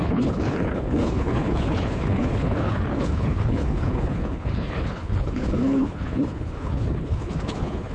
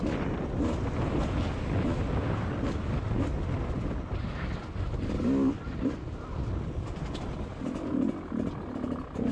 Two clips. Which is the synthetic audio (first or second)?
first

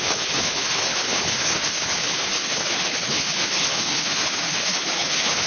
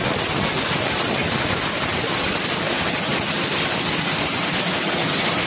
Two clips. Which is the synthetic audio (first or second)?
first